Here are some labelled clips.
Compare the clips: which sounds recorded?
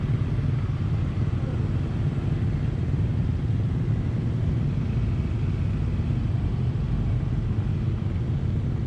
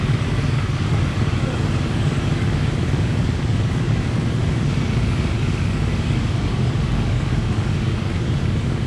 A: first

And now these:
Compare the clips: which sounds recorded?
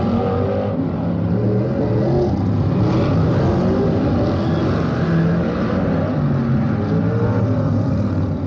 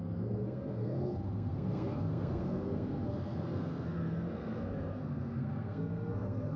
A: first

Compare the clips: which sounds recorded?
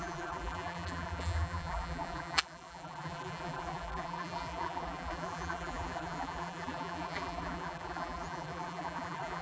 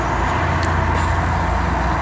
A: second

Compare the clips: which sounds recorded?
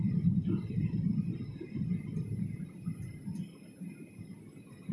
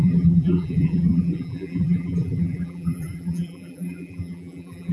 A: first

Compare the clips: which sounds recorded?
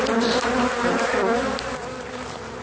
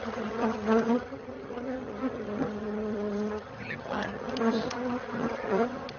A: first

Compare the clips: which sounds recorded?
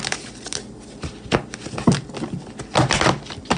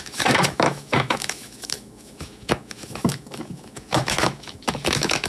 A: first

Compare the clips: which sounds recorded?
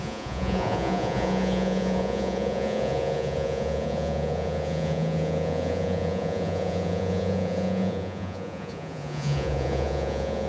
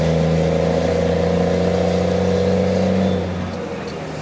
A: second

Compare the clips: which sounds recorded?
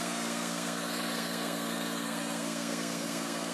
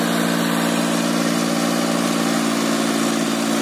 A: second